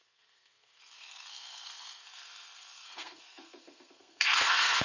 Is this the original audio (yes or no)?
no